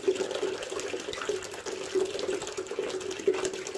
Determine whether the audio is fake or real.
real